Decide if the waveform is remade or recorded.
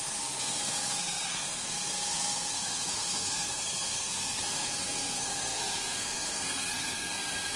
remade